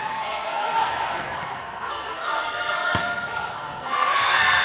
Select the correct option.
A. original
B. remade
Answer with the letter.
B